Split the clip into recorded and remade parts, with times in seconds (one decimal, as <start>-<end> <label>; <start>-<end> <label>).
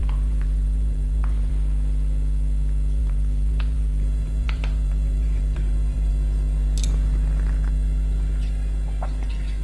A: 0.0-1.5 remade; 1.5-3.0 recorded; 3.0-6.1 remade; 6.1-9.6 recorded